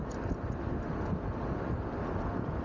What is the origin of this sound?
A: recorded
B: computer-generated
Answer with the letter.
A